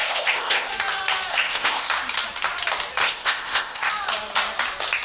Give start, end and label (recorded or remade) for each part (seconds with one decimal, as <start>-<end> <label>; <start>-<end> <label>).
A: 0.0-0.7 remade; 0.7-1.3 recorded; 1.3-1.9 remade; 1.9-3.0 recorded; 3.0-3.9 remade; 3.9-5.0 recorded